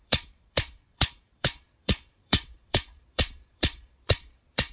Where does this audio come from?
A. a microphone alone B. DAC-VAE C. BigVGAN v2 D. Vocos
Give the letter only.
D